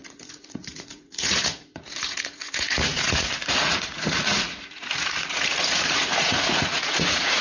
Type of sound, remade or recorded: remade